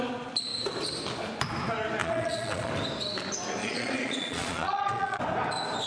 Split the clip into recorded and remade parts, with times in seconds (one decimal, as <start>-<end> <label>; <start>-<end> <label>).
0.0-2.0 recorded; 2.0-2.7 remade; 2.7-3.6 recorded; 3.6-5.2 remade; 5.2-5.9 recorded